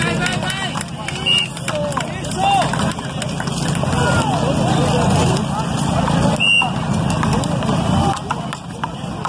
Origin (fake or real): real